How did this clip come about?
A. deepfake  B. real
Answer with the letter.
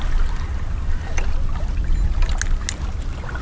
B